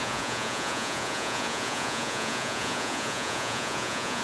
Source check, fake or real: fake